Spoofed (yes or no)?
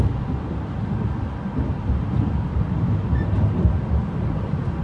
no